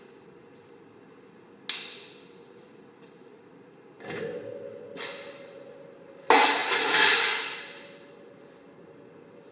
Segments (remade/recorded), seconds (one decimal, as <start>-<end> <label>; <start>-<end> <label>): 0.0-9.5 recorded